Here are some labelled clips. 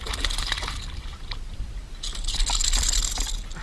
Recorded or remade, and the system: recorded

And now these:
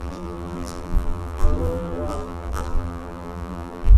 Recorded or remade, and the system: remade, vocoder, BigVGAN v2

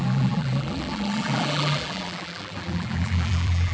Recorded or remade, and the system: remade, vocoder, BigVGAN v2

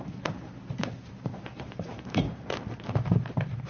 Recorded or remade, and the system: remade, vocoder, BigVGAN v2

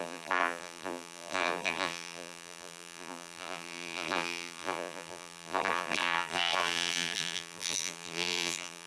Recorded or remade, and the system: remade, vocoder, BigVGAN v2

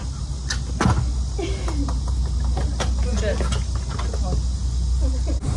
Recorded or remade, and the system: recorded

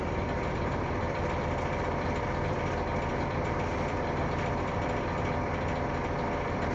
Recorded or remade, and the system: remade, vocoder, BigVGAN v2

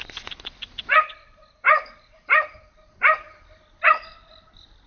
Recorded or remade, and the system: remade, vocoder, BigVGAN v2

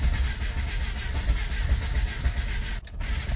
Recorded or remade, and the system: recorded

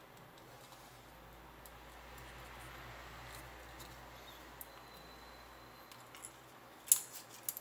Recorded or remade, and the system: recorded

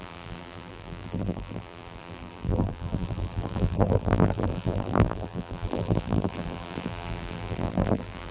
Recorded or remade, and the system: remade, vocoder, BigVGAN v2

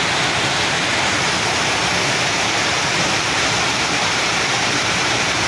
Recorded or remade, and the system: remade, vocoder, BigVGAN v2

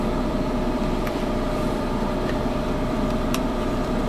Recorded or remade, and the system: remade, vocoder, BigVGAN v2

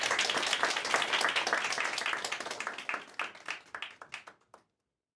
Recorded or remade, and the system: recorded